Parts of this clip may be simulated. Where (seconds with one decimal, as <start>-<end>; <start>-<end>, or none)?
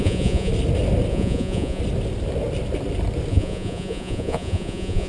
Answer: 0.0-0.5; 1.1-1.8; 3.3-5.1